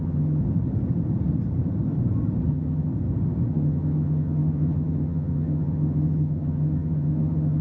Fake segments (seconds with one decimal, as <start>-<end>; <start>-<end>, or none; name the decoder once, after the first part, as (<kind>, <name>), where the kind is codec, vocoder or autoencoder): 0.0-0.4 (vocoder, HiFi-GAN); 2.5-2.9; 3.5-7.6